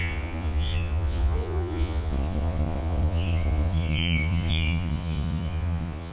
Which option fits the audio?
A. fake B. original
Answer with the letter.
A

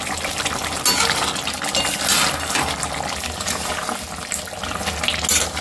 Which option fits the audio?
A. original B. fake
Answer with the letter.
A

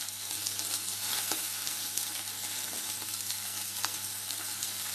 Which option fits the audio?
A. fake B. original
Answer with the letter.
A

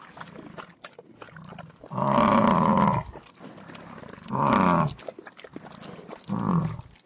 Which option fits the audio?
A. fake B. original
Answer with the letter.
B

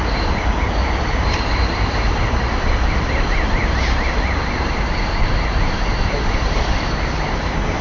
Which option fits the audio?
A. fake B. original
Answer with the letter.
B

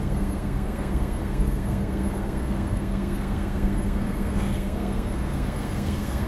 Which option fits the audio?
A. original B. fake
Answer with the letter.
B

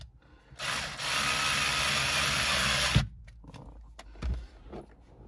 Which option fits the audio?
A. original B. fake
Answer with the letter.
A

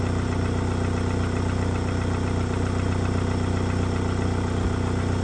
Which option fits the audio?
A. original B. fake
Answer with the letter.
A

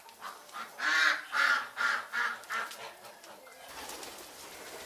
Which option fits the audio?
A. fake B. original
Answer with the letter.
B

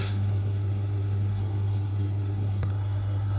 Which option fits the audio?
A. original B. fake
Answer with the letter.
B